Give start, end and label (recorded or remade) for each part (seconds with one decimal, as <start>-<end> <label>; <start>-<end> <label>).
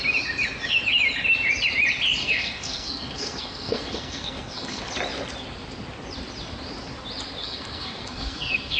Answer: 0.0-2.2 recorded; 2.2-4.8 remade; 4.8-7.4 recorded; 7.4-8.8 remade